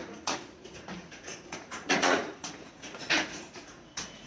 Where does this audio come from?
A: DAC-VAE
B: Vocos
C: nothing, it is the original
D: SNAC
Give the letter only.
B